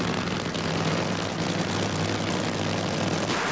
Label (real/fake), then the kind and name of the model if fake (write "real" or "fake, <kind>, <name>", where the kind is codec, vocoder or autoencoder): real